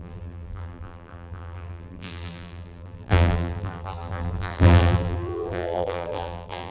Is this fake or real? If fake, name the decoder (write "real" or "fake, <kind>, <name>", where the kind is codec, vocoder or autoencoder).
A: fake, vocoder, BigVGAN v2